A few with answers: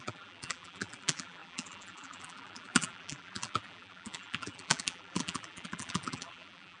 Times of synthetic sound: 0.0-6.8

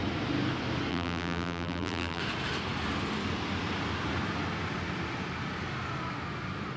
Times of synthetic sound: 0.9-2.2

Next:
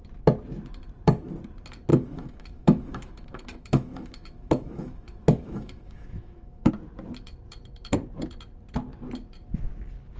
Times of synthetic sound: 1.9-6.7